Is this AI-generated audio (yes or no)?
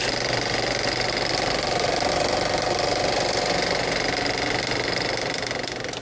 no